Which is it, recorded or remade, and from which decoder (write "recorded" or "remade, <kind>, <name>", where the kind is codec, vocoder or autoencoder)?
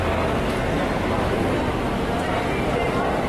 recorded